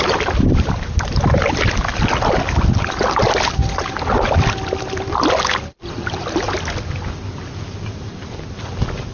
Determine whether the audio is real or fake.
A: real